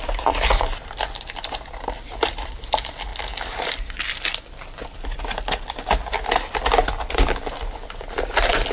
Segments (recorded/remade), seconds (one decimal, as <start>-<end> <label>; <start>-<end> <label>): 0.0-3.1 remade; 3.1-8.0 recorded; 8.0-8.7 remade